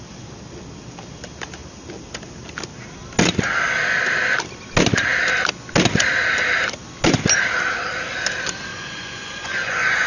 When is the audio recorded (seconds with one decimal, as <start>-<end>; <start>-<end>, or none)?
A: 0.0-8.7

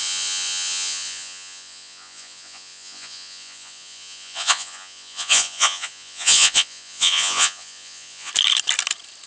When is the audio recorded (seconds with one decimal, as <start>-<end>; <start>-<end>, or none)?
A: 8.3-9.3

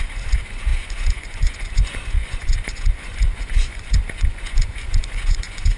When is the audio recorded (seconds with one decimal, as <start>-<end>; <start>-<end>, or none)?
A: none

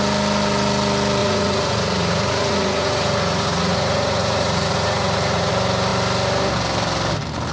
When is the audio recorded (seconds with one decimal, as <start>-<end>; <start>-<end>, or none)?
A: 0.0-1.2; 5.5-7.5